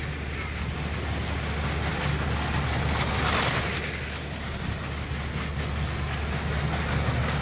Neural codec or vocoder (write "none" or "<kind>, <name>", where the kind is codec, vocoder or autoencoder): none